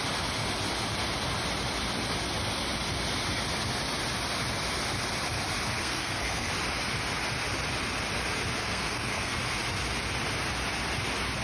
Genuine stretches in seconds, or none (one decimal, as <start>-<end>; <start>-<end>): 0.0-5.8; 6.5-8.6; 9.4-11.4

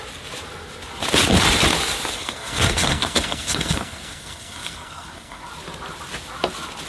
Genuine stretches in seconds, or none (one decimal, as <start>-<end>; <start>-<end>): 0.0-2.1; 5.4-6.9